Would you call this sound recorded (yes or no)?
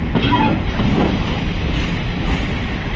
yes